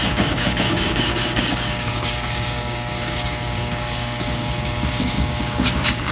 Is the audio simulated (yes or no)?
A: yes